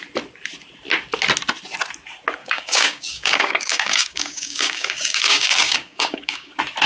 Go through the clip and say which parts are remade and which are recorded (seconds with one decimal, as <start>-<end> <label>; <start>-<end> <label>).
0.0-2.4 recorded; 2.4-6.5 remade; 6.5-6.9 recorded

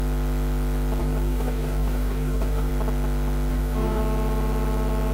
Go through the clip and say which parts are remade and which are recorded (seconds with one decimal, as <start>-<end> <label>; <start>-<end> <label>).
0.0-1.0 recorded; 1.0-2.7 remade; 2.7-3.5 recorded; 3.5-4.0 remade; 4.0-5.1 recorded

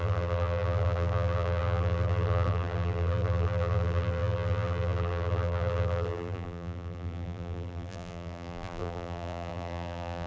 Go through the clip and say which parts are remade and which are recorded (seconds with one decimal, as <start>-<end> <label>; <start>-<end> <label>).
0.0-10.3 remade

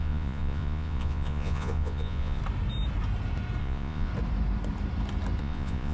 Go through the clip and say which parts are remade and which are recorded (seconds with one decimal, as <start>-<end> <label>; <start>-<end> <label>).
0.0-2.4 remade; 2.4-3.6 recorded; 3.6-4.1 remade; 4.1-5.4 recorded; 5.4-5.9 remade

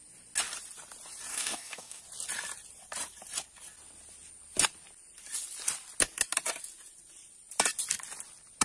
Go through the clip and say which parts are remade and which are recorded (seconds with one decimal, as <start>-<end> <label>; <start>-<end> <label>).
0.0-1.3 recorded; 1.3-2.0 remade; 2.0-8.6 recorded

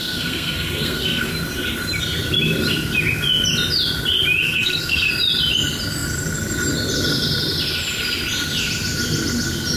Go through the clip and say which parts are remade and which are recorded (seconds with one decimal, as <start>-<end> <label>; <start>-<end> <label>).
0.0-1.3 remade; 1.3-4.4 recorded; 4.4-5.1 remade; 5.1-9.8 recorded

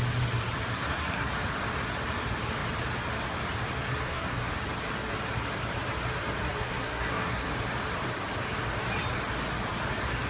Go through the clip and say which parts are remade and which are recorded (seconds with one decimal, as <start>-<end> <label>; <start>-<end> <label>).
0.0-0.7 recorded; 0.7-1.3 remade; 1.3-3.9 recorded; 3.9-4.5 remade; 4.5-6.4 recorded; 6.4-7.5 remade; 7.5-10.3 recorded